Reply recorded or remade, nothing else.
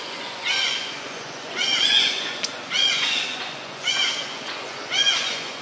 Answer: remade